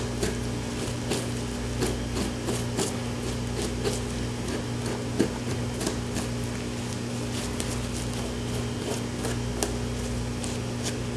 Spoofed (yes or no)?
no